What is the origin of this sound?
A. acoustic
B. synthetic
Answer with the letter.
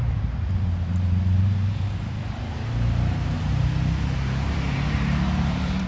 B